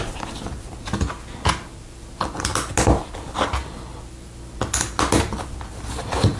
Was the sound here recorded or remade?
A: recorded